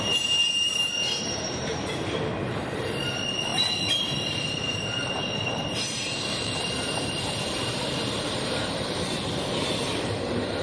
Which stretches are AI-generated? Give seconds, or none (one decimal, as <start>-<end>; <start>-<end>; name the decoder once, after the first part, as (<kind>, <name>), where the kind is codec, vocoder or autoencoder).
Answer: 0.0-10.6 (vocoder, BigVGAN v2)